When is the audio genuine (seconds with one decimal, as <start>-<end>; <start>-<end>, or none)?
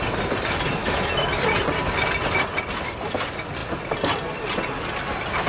0.0-0.8; 1.4-5.5